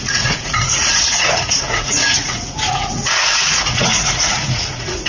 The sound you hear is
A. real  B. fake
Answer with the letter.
B